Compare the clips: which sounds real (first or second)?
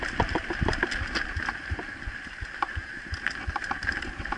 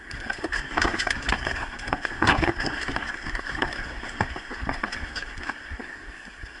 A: first